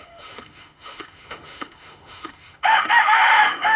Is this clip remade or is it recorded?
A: remade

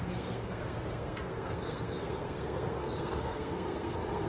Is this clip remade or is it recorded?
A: remade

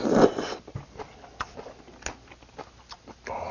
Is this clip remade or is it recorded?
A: recorded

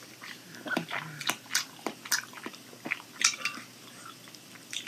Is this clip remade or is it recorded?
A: recorded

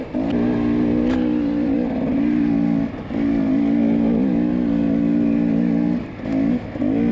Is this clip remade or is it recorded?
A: recorded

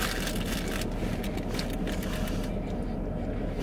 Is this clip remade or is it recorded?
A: recorded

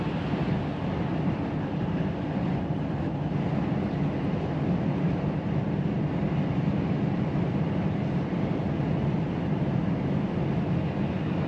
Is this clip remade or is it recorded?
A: recorded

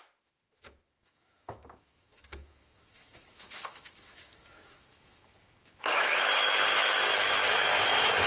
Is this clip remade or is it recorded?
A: remade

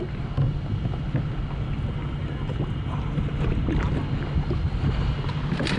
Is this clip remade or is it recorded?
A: recorded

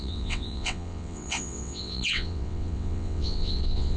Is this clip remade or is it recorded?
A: remade